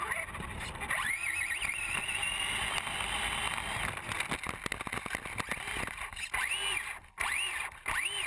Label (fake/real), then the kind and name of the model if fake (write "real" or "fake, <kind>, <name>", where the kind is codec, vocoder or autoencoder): real